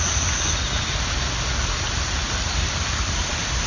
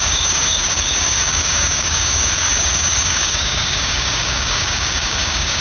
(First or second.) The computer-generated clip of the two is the second